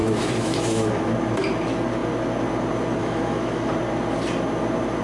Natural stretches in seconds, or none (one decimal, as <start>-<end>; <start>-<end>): 1.0-3.0; 3.7-5.0